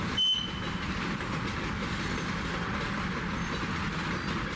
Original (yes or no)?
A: yes